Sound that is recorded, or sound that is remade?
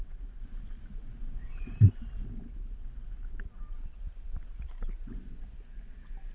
recorded